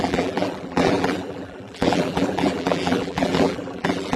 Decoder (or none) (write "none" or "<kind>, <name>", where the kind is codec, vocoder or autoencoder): vocoder, BigVGAN v2